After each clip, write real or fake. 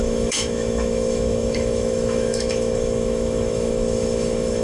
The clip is fake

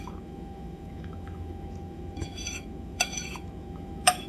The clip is fake